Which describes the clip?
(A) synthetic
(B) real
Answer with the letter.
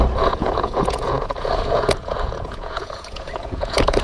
A